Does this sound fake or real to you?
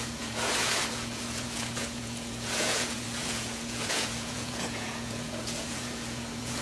fake